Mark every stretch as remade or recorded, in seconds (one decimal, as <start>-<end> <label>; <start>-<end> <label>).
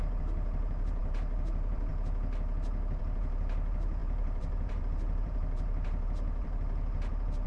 0.0-1.9 remade; 1.9-3.0 recorded; 3.0-7.5 remade